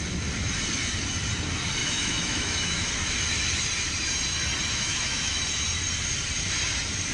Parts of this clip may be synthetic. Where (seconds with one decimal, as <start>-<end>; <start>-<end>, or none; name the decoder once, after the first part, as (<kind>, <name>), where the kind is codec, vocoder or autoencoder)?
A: 1.8-2.9 (autoencoder, DAC-VAE); 4.7-5.4

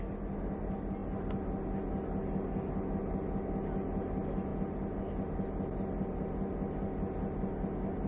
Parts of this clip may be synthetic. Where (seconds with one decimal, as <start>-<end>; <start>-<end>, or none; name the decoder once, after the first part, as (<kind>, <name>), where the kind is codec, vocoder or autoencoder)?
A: none

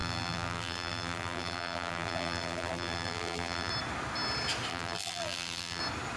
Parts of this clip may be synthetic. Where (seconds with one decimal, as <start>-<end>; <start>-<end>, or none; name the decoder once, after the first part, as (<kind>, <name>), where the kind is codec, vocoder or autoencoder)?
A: 0.0-3.7 (vocoder, BigVGAN v2); 4.7-5.8

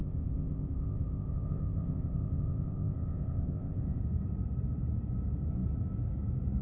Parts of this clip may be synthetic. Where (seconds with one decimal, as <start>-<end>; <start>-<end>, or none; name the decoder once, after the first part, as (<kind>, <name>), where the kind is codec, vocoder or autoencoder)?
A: 0.0-4.0 (codec, ZipCodec)

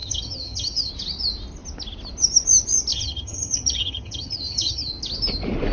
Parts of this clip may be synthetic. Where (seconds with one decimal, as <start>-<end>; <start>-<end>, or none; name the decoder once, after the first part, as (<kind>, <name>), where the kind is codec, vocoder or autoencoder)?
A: 0.0-0.9 (vocoder, HiFi-GAN); 2.9-4.9

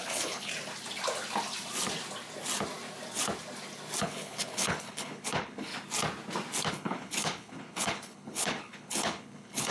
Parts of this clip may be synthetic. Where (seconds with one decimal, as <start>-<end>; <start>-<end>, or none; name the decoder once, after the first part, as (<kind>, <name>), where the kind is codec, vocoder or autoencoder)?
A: 0.0-0.5 (codec, HILCodec); 4.0-5.7; 6.7-9.7